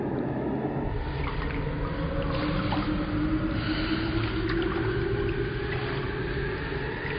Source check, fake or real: real